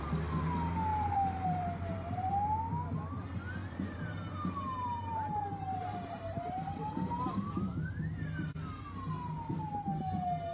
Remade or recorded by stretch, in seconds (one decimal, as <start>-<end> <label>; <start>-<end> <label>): 0.0-0.9 recorded; 0.9-2.3 remade; 2.3-3.6 recorded; 3.6-7.7 remade; 7.7-10.5 recorded

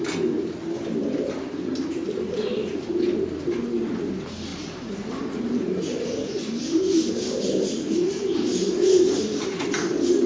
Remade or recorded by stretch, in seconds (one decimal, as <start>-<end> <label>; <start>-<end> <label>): 0.0-10.3 recorded

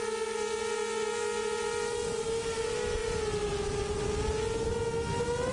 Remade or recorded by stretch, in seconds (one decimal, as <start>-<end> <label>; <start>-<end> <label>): 0.0-5.5 recorded